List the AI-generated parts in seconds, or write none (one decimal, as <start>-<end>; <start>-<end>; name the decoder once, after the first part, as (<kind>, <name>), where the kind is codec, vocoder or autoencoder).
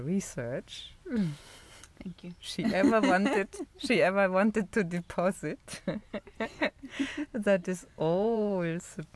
6.0-6.7 (vocoder, Vocos); 7.6-9.2